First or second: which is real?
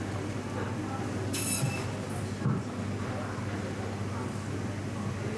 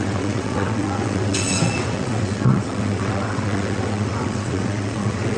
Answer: first